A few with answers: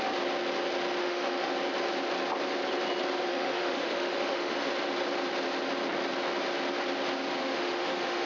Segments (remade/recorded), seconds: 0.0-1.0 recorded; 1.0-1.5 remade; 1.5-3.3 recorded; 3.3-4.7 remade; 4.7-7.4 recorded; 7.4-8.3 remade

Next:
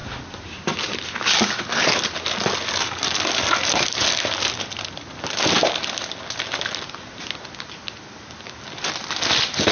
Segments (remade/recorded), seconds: 0.0-9.7 recorded

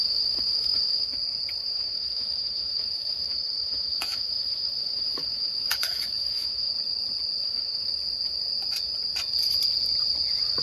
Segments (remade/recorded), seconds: 0.0-1.1 remade; 1.1-1.6 recorded; 1.6-6.7 remade; 6.7-7.4 recorded; 7.4-7.9 remade; 7.9-10.6 recorded

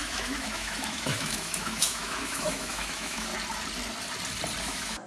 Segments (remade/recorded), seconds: 0.0-3.3 remade; 3.3-4.6 recorded; 4.6-5.1 remade

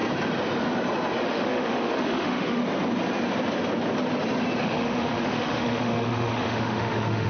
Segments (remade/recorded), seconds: 0.0-1.2 recorded; 1.2-2.6 remade; 2.6-4.6 recorded; 4.6-7.3 remade